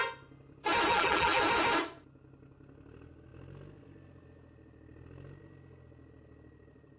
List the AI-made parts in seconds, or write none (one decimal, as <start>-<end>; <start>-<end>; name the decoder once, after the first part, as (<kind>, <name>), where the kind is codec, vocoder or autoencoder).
0.9-1.4 (vocoder, BigVGAN v2)